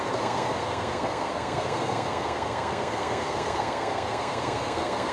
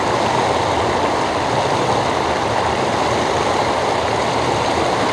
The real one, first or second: second